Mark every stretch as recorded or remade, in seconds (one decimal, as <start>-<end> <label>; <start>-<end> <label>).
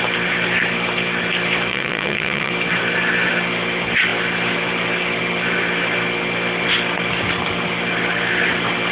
0.0-1.7 recorded; 1.7-2.5 remade; 2.5-8.9 recorded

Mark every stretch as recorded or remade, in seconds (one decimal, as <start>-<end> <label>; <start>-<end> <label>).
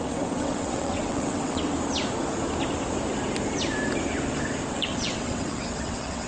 0.0-1.7 remade; 1.7-4.7 recorded; 4.7-6.3 remade